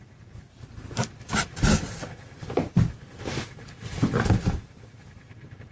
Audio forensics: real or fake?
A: real